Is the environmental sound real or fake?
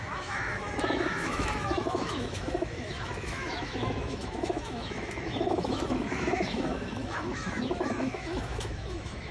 fake